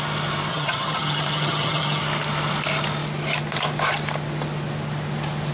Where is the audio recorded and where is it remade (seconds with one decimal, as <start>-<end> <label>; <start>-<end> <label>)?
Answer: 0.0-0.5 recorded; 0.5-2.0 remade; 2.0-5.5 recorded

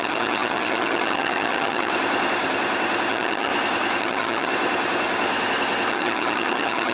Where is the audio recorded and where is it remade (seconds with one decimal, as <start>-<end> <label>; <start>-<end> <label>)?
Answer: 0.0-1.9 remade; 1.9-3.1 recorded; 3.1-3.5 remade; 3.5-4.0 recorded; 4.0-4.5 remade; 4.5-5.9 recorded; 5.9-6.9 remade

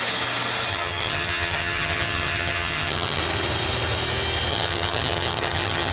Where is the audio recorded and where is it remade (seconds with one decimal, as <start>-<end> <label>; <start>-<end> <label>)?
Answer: 0.0-0.7 recorded; 0.7-3.2 remade; 3.2-4.5 recorded; 4.5-5.9 remade

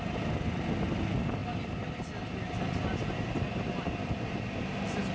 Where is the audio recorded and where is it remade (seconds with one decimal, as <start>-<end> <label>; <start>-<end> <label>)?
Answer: 0.0-5.1 recorded

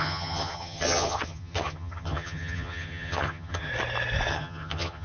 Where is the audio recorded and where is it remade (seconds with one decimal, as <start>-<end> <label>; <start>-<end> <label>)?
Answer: 0.0-3.7 remade; 3.7-4.3 recorded; 4.3-5.0 remade